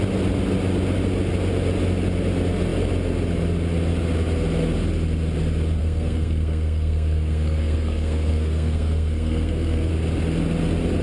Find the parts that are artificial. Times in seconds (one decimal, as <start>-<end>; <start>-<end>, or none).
5.8-9.9